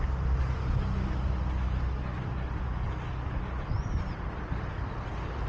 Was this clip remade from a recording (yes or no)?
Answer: no